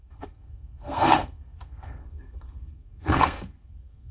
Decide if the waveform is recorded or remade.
remade